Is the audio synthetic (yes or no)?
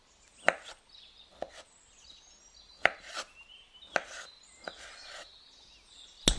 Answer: no